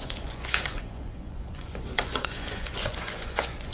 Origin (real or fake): fake